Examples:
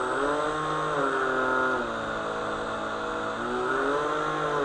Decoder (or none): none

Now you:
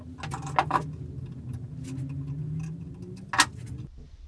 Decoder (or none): none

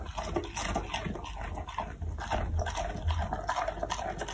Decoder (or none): none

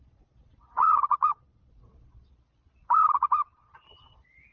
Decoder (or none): vocoder, Vocos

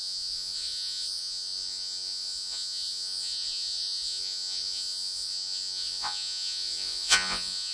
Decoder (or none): vocoder, Vocos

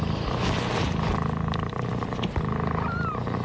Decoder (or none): none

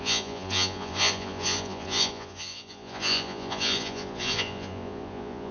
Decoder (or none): vocoder, Vocos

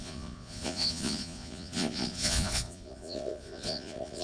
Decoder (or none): vocoder, Vocos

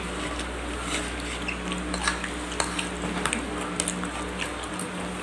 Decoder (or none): none